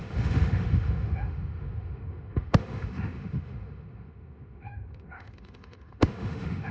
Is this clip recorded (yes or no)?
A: no